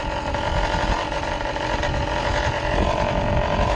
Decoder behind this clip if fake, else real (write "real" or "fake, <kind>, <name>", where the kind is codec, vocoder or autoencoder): real